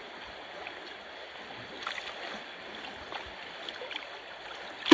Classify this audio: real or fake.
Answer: real